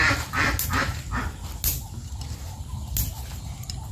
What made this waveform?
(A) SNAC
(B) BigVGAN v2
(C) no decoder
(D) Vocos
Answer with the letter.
C